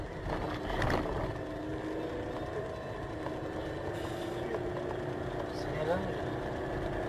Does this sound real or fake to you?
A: real